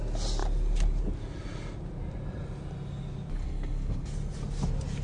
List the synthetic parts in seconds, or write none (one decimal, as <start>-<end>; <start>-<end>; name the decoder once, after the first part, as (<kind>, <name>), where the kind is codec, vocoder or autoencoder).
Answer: 3.4-4.1 (codec, SNAC)